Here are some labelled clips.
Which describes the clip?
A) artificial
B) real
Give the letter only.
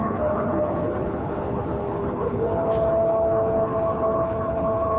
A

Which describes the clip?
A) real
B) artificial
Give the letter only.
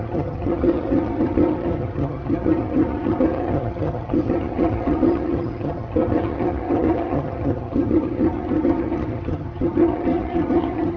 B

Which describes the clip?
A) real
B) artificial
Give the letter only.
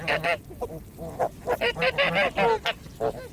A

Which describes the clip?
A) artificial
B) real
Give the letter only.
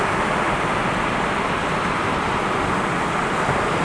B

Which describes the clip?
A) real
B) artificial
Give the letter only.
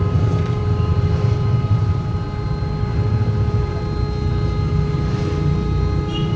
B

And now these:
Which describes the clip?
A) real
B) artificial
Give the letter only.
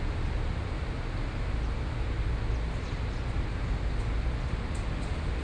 A